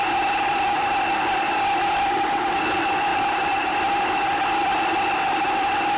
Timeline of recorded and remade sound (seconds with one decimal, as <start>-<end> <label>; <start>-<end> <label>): 0.0-3.1 recorded; 3.1-3.7 remade; 3.7-6.0 recorded